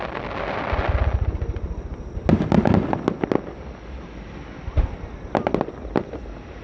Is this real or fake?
real